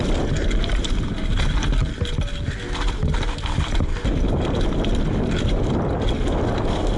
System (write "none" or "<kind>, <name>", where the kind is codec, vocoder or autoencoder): none